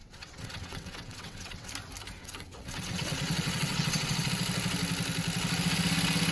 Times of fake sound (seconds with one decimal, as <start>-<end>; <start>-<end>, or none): 0.0-1.7; 2.2-4.3